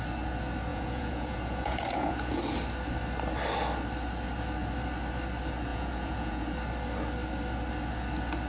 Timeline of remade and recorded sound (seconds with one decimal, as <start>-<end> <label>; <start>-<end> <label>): 0.0-0.7 recorded; 0.7-2.4 remade; 2.4-5.7 recorded; 5.7-6.5 remade; 6.5-8.5 recorded